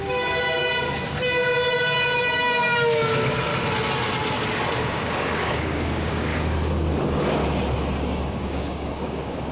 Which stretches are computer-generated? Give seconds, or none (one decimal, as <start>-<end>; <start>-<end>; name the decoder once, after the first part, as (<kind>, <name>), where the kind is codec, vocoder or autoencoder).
0.0-0.6 (codec, DAC); 1.7-3.5; 4.8-6.3; 7.0-7.4; 8.2-9.5